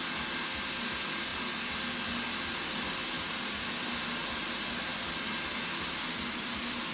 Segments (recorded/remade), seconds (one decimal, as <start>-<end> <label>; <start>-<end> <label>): 0.0-6.9 recorded